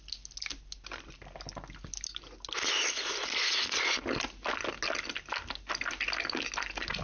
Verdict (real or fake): real